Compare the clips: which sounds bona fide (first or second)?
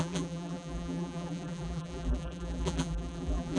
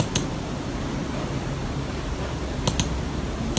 second